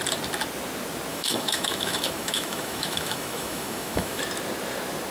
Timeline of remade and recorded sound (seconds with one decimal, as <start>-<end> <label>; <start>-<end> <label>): 0.0-1.1 recorded; 1.1-4.2 remade; 4.2-5.1 recorded